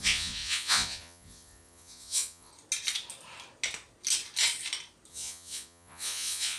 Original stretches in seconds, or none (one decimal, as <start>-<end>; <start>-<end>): 2.5-5.1